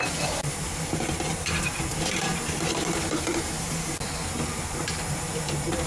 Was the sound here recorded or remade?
remade